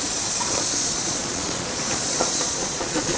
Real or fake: fake